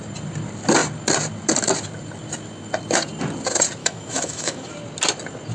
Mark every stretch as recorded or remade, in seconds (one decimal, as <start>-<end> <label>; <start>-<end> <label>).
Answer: 0.0-3.8 recorded; 3.8-4.7 remade; 4.7-5.5 recorded